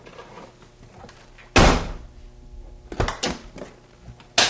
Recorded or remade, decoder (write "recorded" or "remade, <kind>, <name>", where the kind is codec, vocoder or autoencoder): recorded